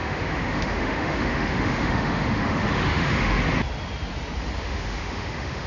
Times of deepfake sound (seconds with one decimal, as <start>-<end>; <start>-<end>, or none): 0.0-3.4; 4.6-5.7